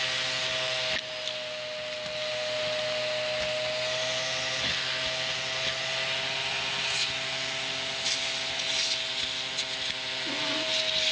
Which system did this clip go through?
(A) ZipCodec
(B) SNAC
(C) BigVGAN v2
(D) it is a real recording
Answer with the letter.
D